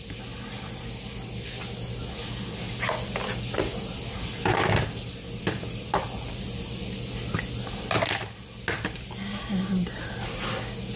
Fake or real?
real